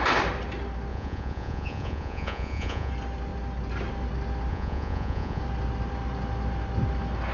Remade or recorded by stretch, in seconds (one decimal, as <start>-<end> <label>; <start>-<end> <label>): 0.0-0.9 recorded; 0.9-2.9 remade; 2.9-4.5 recorded; 4.5-5.4 remade; 5.4-7.3 recorded